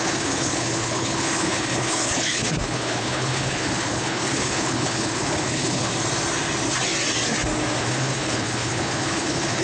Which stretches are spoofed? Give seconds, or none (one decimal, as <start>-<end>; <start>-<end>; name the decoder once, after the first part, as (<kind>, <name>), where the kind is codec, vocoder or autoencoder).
0.0-5.9 (codec, HILCodec); 7.8-9.6

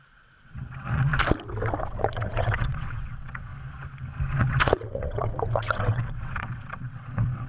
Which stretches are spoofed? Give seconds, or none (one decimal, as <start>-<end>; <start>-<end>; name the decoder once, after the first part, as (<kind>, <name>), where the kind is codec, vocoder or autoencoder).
0.0-1.1 (vocoder, WaveNeXt); 1.8-3.5; 4.4-7.5

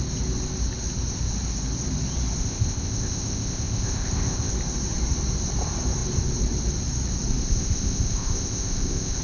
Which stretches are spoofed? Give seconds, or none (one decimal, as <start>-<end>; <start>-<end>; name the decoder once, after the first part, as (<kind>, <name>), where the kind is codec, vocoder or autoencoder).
2.4-4.5 (codec, ZipCodec); 7.4-9.2

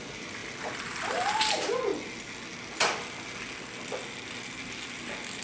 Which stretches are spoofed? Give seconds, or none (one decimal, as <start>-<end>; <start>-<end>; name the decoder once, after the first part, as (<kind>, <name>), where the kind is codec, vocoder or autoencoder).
0.0-1.9 (vocoder, BigVGAN v2)

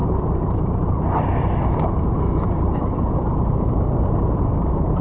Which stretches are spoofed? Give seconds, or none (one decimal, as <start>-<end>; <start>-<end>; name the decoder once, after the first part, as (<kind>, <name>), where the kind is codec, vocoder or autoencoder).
0.0-1.3 (vocoder, BigVGAN v2); 3.5-5.0

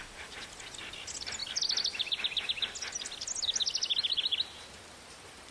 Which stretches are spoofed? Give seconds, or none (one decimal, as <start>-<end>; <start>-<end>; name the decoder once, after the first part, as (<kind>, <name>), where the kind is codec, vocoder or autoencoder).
none

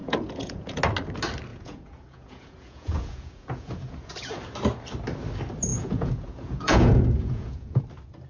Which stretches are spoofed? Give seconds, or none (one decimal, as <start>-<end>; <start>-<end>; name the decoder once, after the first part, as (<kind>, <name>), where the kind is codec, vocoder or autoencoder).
0.0-0.8 (vocoder, Vocos); 1.5-4.4; 5.7-7.8

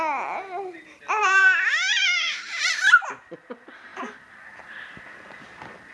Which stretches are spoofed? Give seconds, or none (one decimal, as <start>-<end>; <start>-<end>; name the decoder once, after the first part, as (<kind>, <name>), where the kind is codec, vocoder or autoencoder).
1.2-3.2 (vocoder, BigVGAN v2); 3.9-4.7